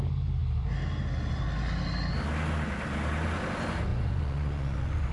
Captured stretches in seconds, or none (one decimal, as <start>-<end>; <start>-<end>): 0.0-3.9